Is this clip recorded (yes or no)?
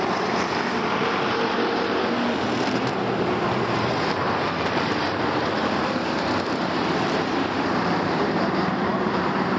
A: no